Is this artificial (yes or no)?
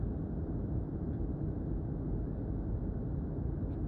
no